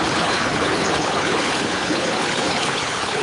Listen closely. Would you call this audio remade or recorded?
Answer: remade